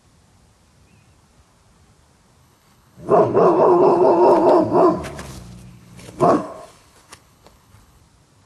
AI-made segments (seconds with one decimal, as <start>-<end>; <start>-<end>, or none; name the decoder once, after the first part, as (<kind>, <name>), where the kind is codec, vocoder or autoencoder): 2.4-4.1 (codec, HILCodec); 5.7-8.0